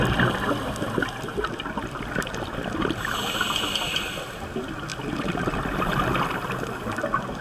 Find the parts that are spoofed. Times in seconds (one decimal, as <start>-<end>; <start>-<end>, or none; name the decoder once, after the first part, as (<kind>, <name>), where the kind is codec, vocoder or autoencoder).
none